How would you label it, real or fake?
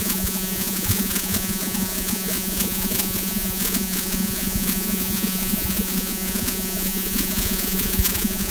fake